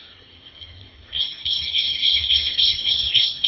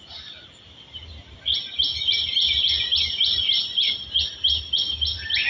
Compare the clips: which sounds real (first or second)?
second